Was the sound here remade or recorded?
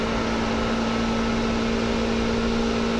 recorded